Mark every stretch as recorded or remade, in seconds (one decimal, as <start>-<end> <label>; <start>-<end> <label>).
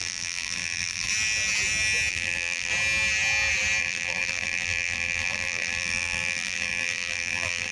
0.0-1.1 remade; 1.1-2.1 recorded; 2.1-2.7 remade; 2.7-3.8 recorded; 3.8-7.7 remade